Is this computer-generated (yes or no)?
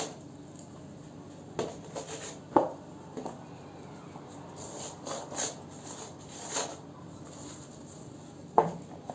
no